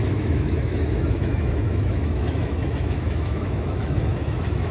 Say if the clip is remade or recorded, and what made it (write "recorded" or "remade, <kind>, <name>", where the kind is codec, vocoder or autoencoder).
remade, autoencoder, DAC-VAE